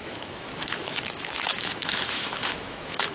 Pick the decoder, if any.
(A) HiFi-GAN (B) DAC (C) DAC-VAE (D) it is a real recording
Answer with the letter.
C